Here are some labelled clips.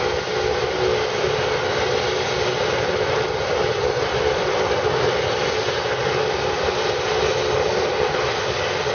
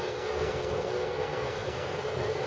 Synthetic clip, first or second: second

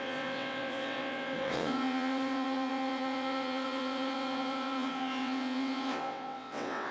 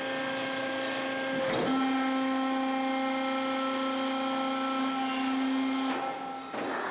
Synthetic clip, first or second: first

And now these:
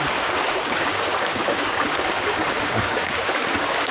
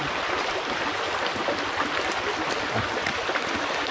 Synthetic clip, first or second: first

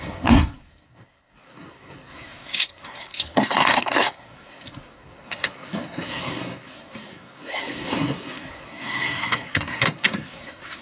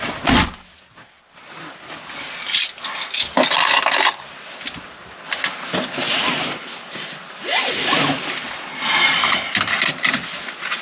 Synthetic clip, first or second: first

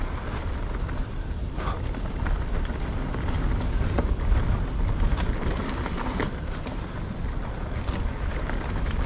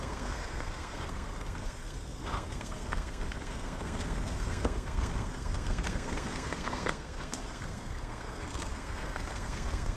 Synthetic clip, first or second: second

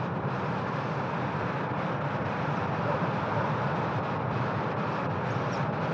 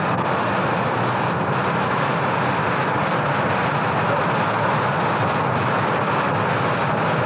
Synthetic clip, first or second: first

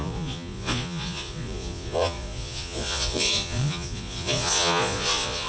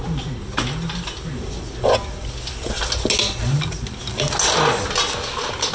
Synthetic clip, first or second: first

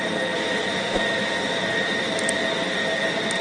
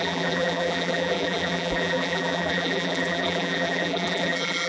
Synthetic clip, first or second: second